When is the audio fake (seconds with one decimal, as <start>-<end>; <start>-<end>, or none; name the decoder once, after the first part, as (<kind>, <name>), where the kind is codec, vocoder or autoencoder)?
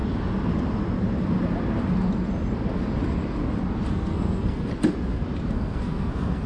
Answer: 3.9-4.7 (codec, SNAC); 5.5-6.5